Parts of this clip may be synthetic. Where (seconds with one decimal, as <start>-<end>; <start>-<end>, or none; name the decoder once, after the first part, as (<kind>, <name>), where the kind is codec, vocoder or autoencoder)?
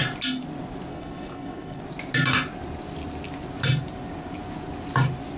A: 0.9-1.8 (codec, HILCodec)